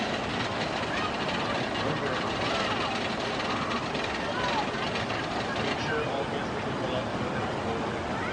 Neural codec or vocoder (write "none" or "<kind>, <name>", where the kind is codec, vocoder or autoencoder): none